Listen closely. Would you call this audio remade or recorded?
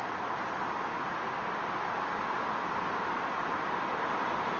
recorded